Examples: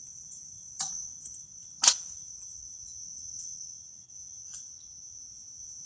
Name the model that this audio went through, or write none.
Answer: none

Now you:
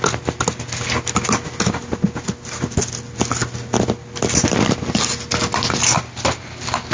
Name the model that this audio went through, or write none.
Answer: none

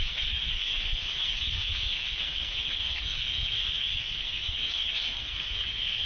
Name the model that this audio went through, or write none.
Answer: codec, SNAC